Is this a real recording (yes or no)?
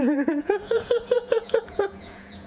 no